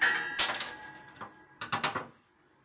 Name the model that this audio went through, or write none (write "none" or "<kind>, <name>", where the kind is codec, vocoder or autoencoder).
none